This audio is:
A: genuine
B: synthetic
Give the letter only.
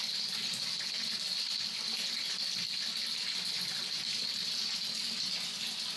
A